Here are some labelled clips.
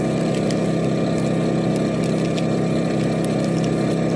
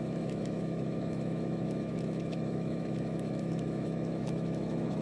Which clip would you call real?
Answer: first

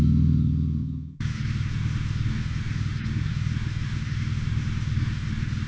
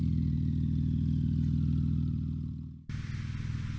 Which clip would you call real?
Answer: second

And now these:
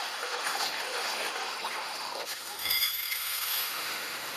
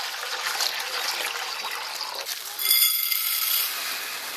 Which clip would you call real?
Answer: second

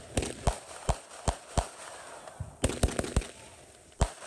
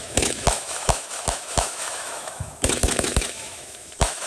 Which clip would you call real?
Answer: first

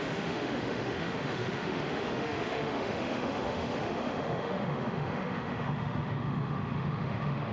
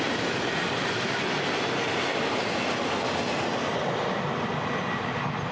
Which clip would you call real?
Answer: second